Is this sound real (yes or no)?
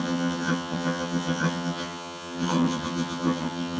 no